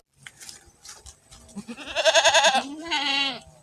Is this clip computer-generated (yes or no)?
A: no